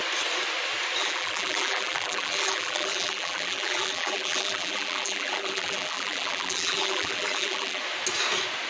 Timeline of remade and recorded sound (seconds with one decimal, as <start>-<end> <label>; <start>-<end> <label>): 0.0-1.0 recorded; 1.0-7.8 remade; 7.8-8.7 recorded